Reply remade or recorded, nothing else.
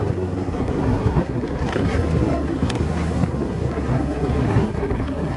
remade